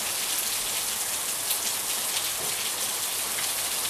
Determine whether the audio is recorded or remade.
recorded